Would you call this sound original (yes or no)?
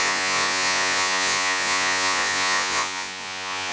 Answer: no